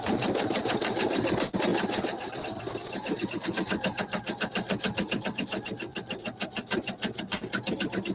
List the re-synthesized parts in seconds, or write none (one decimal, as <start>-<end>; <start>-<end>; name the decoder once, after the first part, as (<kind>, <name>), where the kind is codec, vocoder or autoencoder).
none